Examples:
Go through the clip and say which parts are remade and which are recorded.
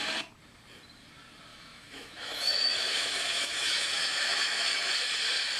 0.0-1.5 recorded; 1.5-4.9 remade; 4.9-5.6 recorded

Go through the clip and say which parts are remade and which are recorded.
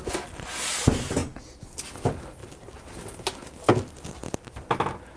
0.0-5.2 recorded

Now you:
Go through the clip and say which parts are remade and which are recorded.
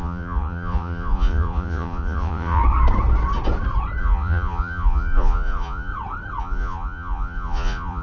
0.0-2.6 remade; 2.6-4.0 recorded; 4.0-5.9 remade; 5.9-6.4 recorded; 6.4-8.0 remade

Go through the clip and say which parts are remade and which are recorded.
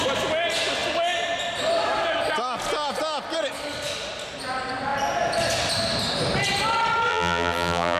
0.0-7.1 recorded; 7.1-8.0 remade